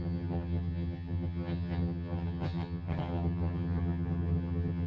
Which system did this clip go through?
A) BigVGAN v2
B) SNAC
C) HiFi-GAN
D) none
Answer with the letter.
C